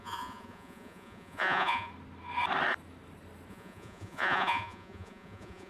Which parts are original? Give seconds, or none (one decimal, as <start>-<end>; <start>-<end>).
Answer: 1.9-3.5

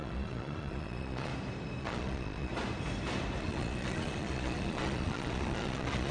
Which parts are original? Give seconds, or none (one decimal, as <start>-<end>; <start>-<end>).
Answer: 1.3-1.8; 2.5-3.4

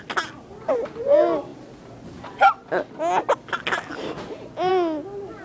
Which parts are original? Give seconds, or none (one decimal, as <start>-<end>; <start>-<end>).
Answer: 0.0-5.4

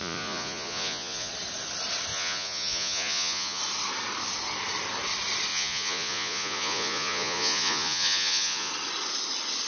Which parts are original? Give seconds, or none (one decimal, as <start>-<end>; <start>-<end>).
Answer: 1.3-2.1; 3.6-5.5; 8.7-9.7

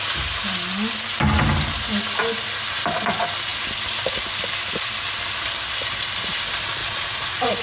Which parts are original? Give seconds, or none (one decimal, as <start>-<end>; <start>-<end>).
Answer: 0.0-6.8

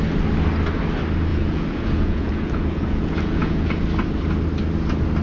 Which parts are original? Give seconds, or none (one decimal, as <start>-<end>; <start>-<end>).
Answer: 0.0-1.3; 3.7-5.2

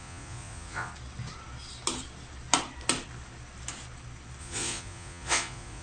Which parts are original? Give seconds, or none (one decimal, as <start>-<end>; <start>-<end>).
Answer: 0.9-4.4

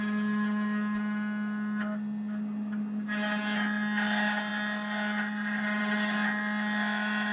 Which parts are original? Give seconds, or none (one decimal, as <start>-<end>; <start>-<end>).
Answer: 0.0-7.3